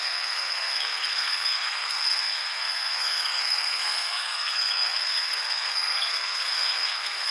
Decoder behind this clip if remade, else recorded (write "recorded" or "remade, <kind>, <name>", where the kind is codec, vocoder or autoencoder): remade, codec, SNAC